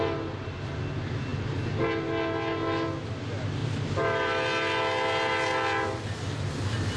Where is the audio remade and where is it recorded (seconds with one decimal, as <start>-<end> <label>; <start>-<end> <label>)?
0.0-7.0 recorded